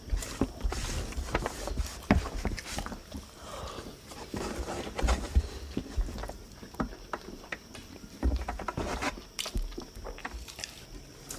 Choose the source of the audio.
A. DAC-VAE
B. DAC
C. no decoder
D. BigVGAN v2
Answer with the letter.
D